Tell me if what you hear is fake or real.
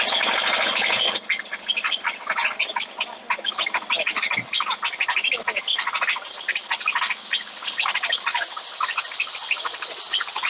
real